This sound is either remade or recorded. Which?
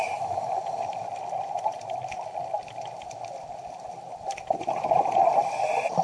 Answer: recorded